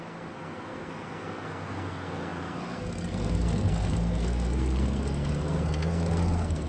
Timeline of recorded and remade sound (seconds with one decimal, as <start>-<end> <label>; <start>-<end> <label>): 0.0-6.7 remade